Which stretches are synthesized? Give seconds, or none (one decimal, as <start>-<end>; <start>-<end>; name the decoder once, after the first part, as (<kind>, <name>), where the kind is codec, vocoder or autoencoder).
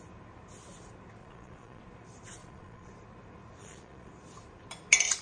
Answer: 1.2-1.8 (vocoder, Vocos); 2.4-2.9; 3.6-4.1